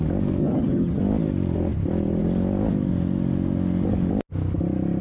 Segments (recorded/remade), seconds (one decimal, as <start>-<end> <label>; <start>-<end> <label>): 0.0-0.4 recorded; 0.4-1.0 remade; 1.0-5.0 recorded